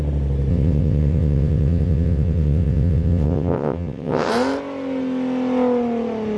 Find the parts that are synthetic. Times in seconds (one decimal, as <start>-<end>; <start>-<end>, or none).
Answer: 0.5-4.3